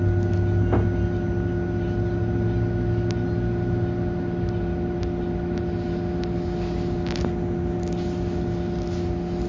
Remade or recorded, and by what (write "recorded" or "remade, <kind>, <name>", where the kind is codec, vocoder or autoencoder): recorded